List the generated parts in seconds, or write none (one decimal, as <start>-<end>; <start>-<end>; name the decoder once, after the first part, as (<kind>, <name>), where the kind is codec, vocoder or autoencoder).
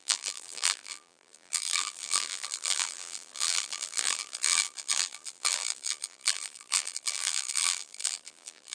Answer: 0.0-8.7 (vocoder, BigVGAN v2)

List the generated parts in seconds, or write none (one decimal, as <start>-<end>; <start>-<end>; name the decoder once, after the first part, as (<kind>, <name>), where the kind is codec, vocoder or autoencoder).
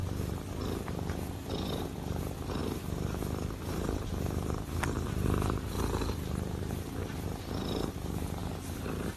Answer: 2.2-9.2 (vocoder, BigVGAN v2)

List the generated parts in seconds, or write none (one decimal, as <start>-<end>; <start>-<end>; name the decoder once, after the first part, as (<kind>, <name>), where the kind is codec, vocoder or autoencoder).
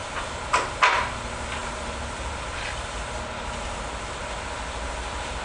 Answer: none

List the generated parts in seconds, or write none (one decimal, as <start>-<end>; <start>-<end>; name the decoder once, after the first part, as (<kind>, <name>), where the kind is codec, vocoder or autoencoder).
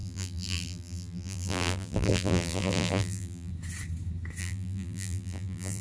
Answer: 0.0-3.5 (vocoder, BigVGAN v2); 4.4-5.8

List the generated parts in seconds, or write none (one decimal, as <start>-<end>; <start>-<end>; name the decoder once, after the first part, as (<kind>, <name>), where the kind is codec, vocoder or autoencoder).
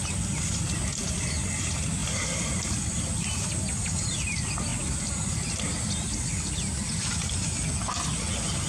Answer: 2.0-2.6 (vocoder, BigVGAN v2); 4.7-5.6